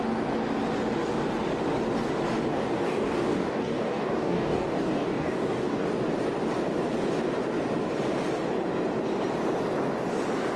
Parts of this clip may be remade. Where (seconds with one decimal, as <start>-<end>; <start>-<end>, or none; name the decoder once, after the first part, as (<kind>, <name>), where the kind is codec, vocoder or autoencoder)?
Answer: 2.5-5.9 (codec, DAC)